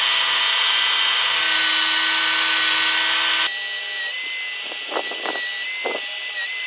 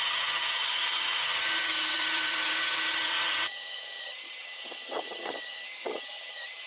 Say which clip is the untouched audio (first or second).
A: first